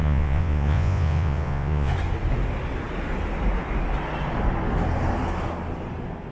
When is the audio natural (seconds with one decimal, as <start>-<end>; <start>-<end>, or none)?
1.9-6.3